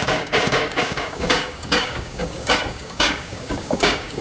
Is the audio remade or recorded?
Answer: remade